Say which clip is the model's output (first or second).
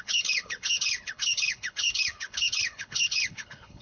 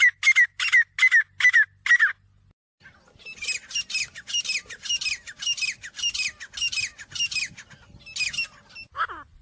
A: first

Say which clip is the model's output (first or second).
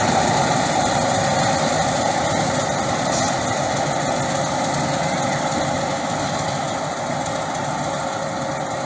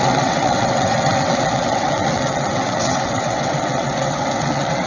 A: second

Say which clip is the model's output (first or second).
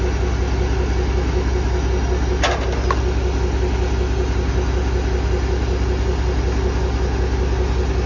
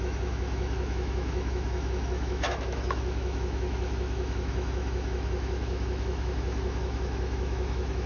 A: second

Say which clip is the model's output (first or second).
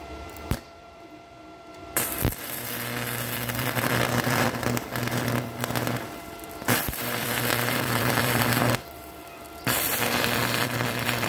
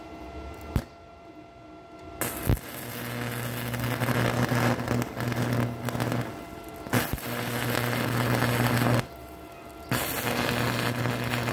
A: first